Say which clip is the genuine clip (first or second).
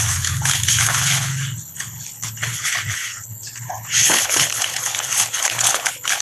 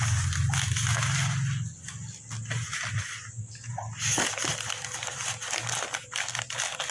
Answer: second